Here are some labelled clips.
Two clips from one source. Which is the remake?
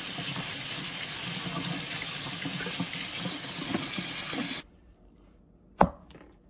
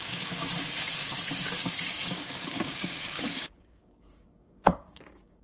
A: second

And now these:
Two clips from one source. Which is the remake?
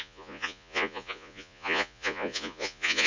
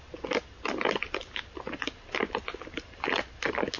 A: first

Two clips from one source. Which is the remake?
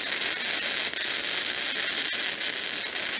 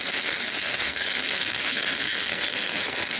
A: second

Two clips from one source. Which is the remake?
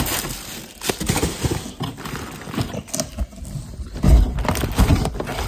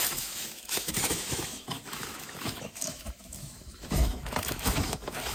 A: second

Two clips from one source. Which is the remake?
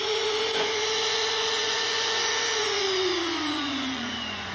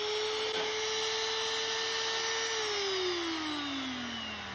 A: first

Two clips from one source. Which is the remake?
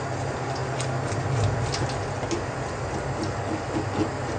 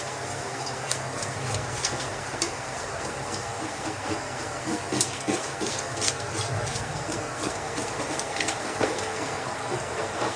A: second